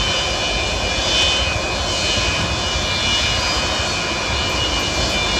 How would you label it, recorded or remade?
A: recorded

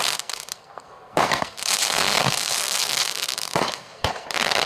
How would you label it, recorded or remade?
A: remade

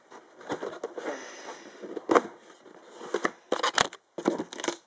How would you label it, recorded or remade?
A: recorded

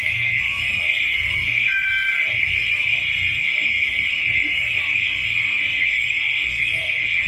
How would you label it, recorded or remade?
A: remade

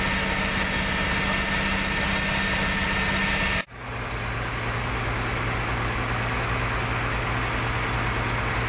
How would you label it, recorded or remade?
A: recorded